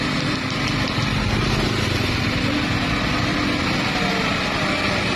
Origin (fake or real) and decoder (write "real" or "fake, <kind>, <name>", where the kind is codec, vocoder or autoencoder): real